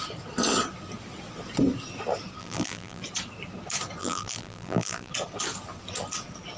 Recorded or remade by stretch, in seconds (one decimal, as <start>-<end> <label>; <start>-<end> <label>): 0.0-2.4 recorded; 2.4-3.0 remade; 3.0-4.0 recorded; 4.0-5.1 remade; 5.1-6.6 recorded